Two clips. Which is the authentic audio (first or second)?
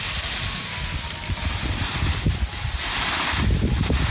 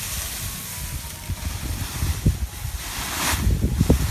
second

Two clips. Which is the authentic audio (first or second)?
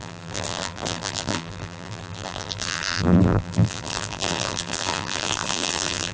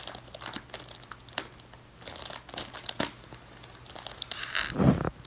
second